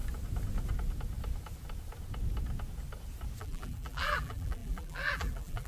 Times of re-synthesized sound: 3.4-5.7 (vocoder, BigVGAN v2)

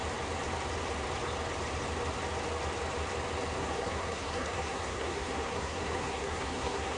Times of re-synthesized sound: 3.6-7.0 (codec, SNAC)

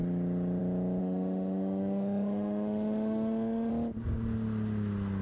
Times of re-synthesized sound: 1.0-3.7 (autoencoder, DAC-VAE)

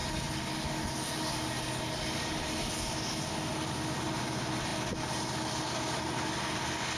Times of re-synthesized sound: none

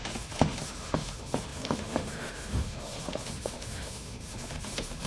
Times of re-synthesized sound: 0.0-5.1 (autoencoder, DAC-VAE)

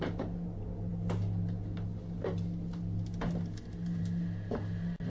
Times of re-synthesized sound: none

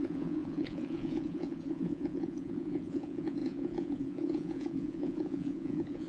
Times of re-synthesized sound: 0.0-6.1 (vocoder, Vocos)

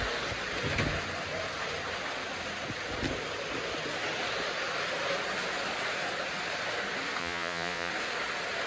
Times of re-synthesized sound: 7.2-7.9 (vocoder, Vocos)